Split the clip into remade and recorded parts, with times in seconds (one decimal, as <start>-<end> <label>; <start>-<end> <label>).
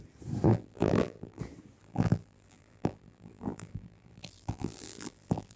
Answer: 0.0-0.5 recorded; 0.5-1.4 remade; 1.4-1.8 recorded; 1.8-5.6 remade